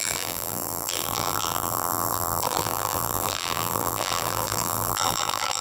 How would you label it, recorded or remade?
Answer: remade